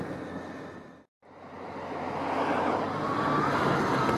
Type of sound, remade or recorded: recorded